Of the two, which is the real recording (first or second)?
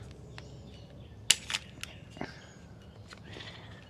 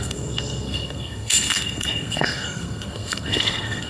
first